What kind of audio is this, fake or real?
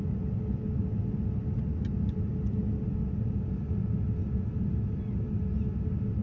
real